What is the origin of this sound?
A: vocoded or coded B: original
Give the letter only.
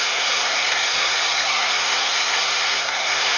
A